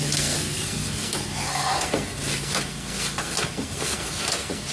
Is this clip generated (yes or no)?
yes